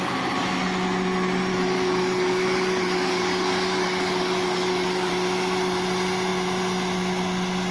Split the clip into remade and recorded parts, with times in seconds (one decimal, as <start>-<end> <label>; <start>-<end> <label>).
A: 0.0-1.5 recorded; 1.5-5.1 remade; 5.1-7.7 recorded